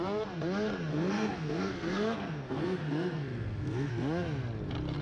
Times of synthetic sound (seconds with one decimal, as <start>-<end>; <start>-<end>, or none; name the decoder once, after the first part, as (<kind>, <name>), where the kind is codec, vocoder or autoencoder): 0.9-3.9 (codec, SNAC)